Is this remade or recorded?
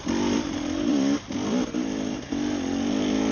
remade